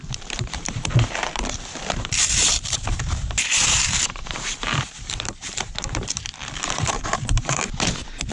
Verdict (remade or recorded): remade